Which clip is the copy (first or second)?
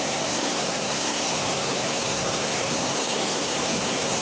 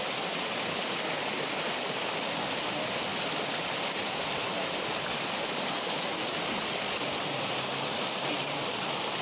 first